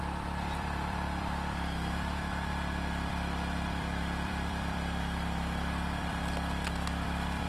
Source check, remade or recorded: remade